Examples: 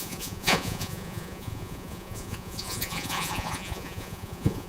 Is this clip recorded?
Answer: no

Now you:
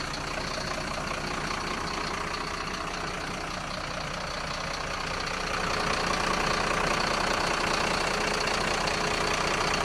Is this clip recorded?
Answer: yes